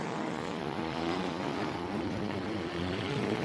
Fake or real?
fake